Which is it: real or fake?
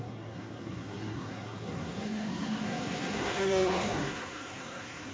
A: fake